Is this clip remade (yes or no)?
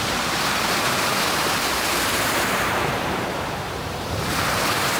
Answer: yes